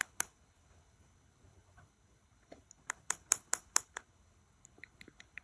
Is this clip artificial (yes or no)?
yes